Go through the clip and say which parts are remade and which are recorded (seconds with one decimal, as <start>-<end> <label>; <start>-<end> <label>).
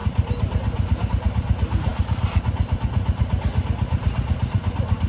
0.0-5.1 recorded